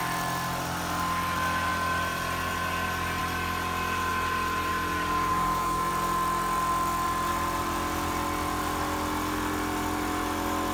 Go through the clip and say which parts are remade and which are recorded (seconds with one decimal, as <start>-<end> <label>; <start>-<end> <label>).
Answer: 0.0-5.3 recorded; 5.3-5.9 remade; 5.9-10.7 recorded